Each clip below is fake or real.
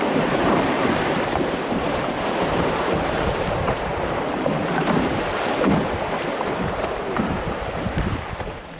fake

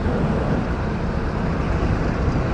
real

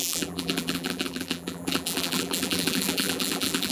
fake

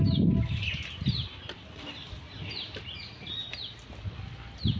real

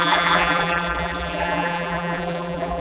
fake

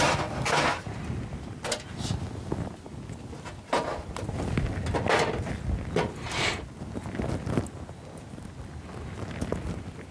real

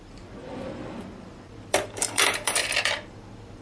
fake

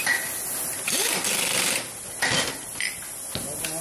real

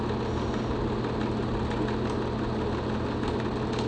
real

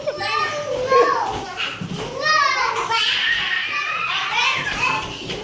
fake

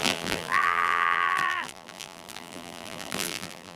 fake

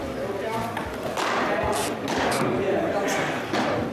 fake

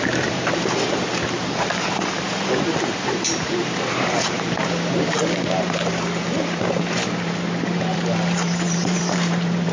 fake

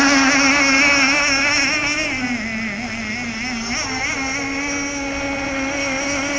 real